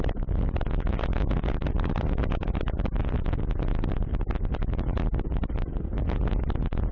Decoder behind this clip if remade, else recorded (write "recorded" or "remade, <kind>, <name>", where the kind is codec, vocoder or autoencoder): remade, vocoder, BigVGAN v2